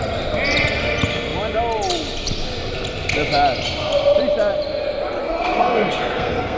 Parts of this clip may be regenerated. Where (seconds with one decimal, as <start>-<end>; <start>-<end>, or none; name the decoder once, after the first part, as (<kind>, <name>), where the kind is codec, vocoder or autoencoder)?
5.2-6.6 (codec, SNAC)

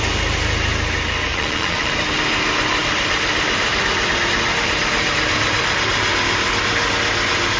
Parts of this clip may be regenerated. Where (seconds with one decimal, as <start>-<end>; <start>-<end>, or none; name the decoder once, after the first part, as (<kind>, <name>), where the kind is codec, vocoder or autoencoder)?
1.3-1.9 (vocoder, Vocos)

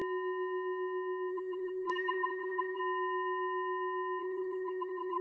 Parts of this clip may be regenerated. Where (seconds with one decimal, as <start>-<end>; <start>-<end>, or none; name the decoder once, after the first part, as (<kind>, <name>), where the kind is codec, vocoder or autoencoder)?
1.3-2.8 (codec, SNAC); 4.2-5.2

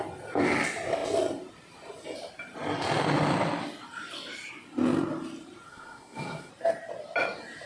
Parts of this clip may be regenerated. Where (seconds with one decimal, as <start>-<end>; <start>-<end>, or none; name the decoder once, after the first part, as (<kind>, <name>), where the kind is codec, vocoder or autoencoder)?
5.7-6.5 (codec, SNAC)